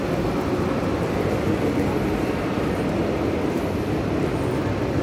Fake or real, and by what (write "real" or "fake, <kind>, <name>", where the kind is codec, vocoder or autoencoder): real